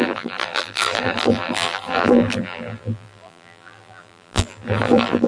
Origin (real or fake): fake